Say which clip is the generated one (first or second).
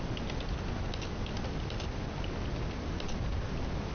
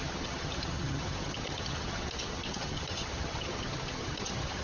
second